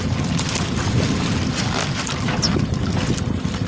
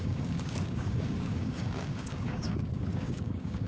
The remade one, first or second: second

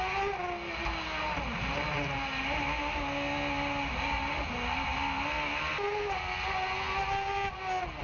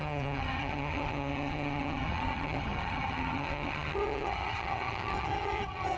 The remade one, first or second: second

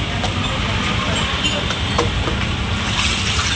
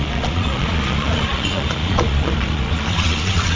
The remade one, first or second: second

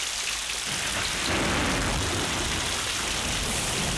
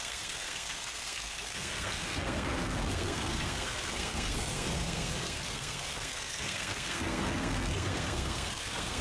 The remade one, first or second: second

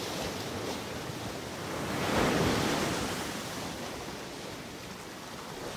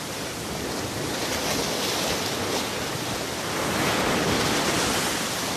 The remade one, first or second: first